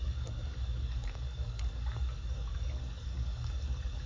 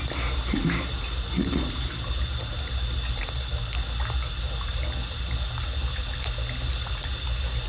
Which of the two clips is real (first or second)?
second